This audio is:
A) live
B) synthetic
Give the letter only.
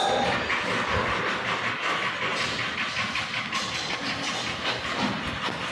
A